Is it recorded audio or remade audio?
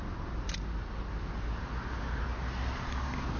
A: recorded